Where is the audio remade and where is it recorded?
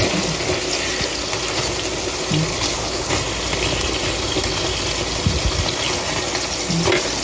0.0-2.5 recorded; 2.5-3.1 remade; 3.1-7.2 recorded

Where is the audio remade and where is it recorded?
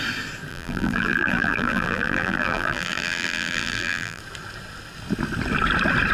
0.0-0.5 recorded; 0.5-4.2 remade; 4.2-6.1 recorded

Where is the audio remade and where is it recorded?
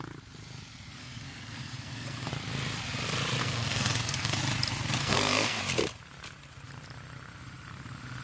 0.0-1.0 recorded; 1.0-2.3 remade; 2.3-3.4 recorded; 3.4-4.4 remade; 4.4-5.0 recorded; 5.0-5.6 remade; 5.6-8.2 recorded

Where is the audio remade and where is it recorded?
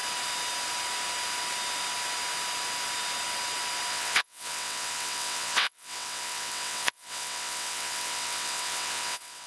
0.0-3.9 recorded; 3.9-9.5 remade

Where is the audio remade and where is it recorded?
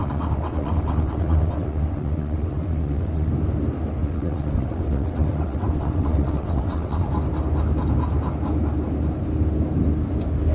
0.0-3.3 remade; 3.3-4.0 recorded; 4.0-7.1 remade; 7.1-10.5 recorded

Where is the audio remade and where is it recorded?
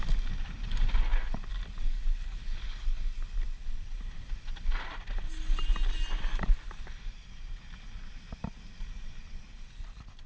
0.0-10.3 recorded